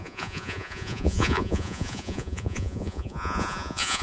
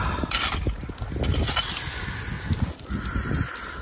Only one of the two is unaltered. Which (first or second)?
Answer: second